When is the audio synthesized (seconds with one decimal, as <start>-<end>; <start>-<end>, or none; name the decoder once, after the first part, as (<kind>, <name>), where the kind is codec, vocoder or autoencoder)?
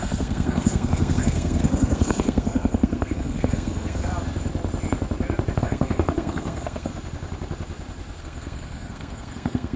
0.0-4.1 (codec, SNAC); 5.6-6.9; 8.2-9.8